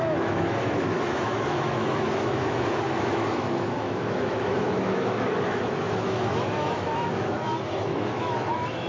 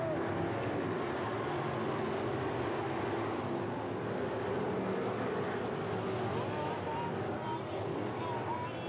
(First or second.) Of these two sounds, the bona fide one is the second